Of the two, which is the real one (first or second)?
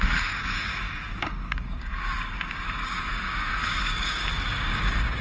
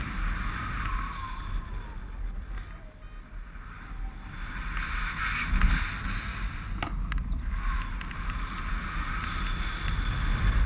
second